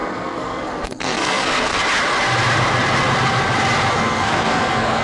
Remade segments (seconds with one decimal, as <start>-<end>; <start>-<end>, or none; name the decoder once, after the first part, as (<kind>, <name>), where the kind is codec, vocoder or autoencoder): 0.0-1.7 (codec, SNAC); 3.9-5.0